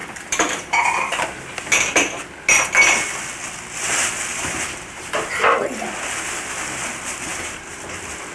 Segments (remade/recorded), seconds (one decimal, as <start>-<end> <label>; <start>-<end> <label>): 0.0-0.6 remade; 0.6-4.3 recorded; 4.3-5.5 remade; 5.5-7.3 recorded; 7.3-7.8 remade; 7.8-8.3 recorded